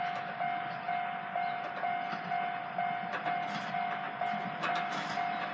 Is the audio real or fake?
real